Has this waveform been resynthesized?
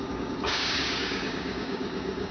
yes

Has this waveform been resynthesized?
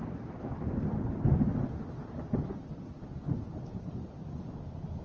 no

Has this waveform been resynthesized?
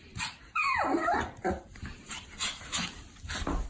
no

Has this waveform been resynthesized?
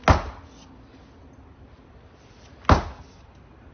no